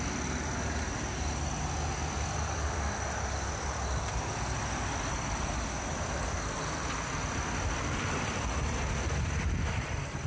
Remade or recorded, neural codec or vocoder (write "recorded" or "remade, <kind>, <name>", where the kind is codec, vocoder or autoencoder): recorded